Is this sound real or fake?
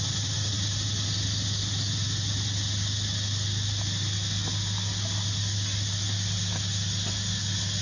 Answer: real